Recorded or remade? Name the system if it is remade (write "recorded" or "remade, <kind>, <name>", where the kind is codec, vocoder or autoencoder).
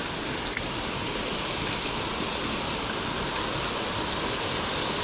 recorded